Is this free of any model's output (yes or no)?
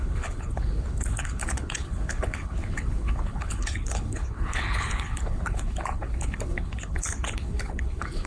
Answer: no